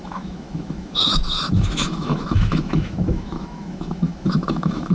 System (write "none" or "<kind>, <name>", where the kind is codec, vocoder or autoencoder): autoencoder, DAC-VAE